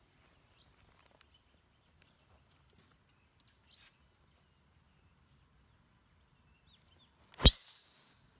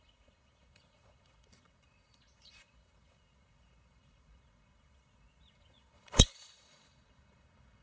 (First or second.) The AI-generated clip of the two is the second